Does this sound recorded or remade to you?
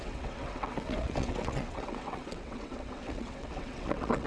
remade